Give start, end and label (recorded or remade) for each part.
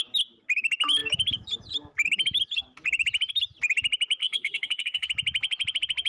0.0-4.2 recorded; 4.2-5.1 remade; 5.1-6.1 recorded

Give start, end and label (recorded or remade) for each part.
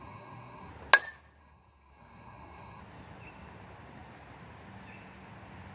0.0-0.7 remade; 0.7-1.4 recorded; 1.4-2.8 remade; 2.8-5.7 recorded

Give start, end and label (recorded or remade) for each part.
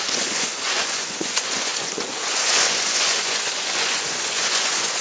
0.0-5.0 remade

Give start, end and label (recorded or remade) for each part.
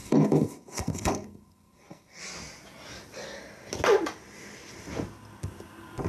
0.0-2.2 remade; 2.2-6.1 recorded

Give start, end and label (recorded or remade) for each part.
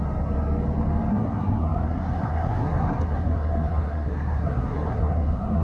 0.0-1.1 recorded; 1.1-5.6 remade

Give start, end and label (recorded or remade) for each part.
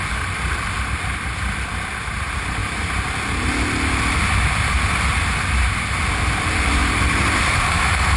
0.0-6.8 recorded; 6.8-8.2 remade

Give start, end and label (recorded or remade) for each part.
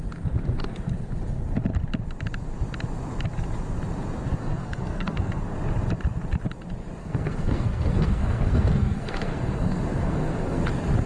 0.0-4.4 recorded; 4.4-5.4 remade; 5.4-7.0 recorded; 7.0-10.6 remade; 10.6-11.1 recorded